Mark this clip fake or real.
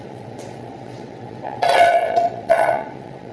fake